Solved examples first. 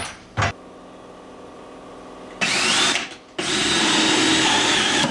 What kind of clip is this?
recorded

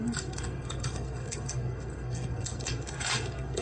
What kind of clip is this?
remade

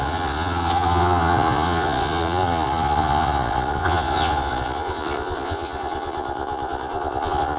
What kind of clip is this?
remade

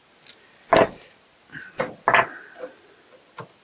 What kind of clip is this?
recorded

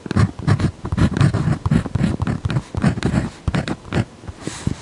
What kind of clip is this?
recorded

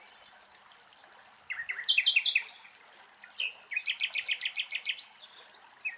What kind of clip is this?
recorded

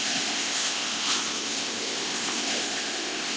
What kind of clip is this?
remade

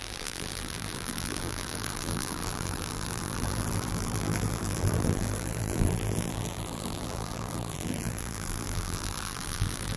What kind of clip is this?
remade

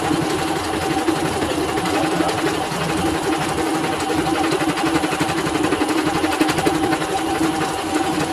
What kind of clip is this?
recorded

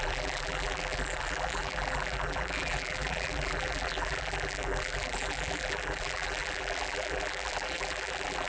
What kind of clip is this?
remade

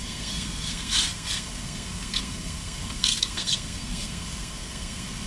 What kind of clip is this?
remade